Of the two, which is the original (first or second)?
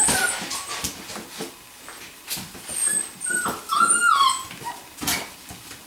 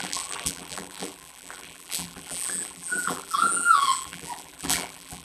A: first